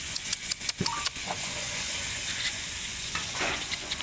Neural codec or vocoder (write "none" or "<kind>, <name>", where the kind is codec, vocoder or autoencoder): vocoder, Vocos